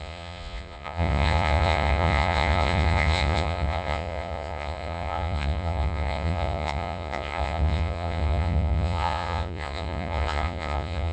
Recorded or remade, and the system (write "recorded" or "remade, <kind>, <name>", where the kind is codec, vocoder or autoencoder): remade, vocoder, Vocos